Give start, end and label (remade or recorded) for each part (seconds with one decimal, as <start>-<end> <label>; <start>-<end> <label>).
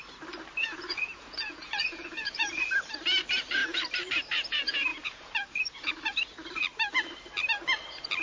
0.0-0.6 recorded; 0.6-2.5 remade; 2.5-4.9 recorded; 4.9-6.1 remade; 6.1-8.2 recorded